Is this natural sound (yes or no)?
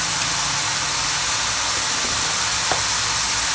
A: yes